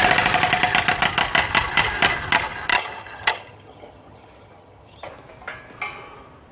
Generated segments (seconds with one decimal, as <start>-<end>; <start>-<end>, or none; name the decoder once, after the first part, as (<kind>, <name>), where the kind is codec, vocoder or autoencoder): 2.7-5.1 (vocoder, HiFi-GAN)

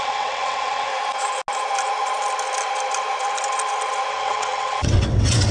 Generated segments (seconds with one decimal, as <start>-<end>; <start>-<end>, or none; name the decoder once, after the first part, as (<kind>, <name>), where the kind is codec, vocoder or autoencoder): 0.0-0.9 (vocoder, WaveNeXt); 4.1-5.5

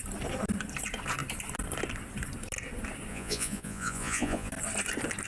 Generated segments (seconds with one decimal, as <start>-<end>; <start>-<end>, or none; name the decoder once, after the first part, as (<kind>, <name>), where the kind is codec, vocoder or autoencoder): 3.1-4.5 (vocoder, Vocos)

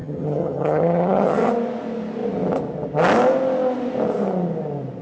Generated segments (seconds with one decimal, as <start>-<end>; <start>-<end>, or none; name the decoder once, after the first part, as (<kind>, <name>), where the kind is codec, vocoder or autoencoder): 0.0-1.5 (vocoder, HiFi-GAN)

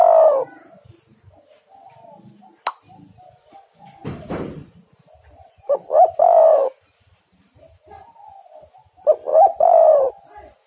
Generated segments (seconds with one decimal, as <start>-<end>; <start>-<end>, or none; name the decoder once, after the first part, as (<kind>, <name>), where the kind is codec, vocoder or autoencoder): 4.0-8.2 (vocoder, BigVGAN v2); 9.3-10.1

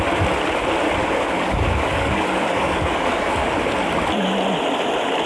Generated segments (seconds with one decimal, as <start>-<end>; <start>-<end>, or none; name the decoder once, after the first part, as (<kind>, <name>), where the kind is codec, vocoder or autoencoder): 1.0-3.5 (codec, DAC)

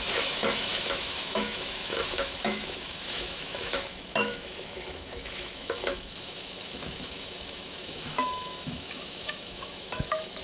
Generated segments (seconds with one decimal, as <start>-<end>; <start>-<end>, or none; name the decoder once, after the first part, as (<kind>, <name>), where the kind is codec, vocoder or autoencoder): 0.0-10.4 (autoencoder, DAC-VAE)